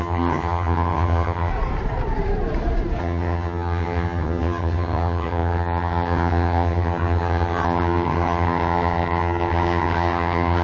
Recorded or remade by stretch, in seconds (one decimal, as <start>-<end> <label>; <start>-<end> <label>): 0.0-1.5 remade; 1.5-3.0 recorded; 3.0-10.6 remade